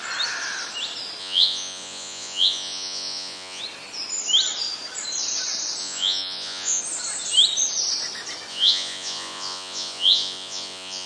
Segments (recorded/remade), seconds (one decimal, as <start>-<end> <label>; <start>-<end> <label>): 0.0-1.2 recorded; 1.2-3.6 remade; 3.6-5.8 recorded; 5.8-6.8 remade; 6.8-8.5 recorded; 8.5-11.1 remade